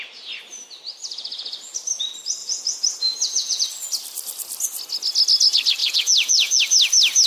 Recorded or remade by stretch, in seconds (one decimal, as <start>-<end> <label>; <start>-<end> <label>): 0.0-2.4 recorded; 2.4-3.6 remade; 3.6-5.8 recorded; 5.8-6.6 remade; 6.6-7.3 recorded